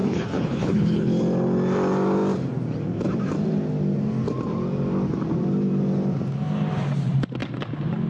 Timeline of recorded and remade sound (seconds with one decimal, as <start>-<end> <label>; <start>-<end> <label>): 0.0-1.1 remade; 1.1-8.1 recorded